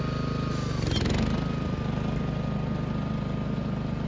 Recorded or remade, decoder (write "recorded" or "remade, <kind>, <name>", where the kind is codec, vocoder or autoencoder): recorded